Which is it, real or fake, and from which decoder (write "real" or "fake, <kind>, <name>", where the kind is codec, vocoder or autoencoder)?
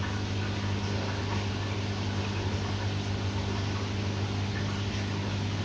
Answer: real